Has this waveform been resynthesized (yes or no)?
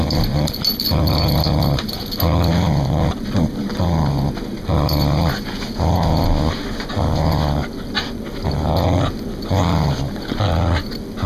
no